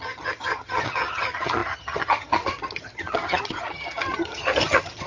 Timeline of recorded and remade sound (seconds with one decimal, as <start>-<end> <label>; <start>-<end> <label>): 0.0-5.1 remade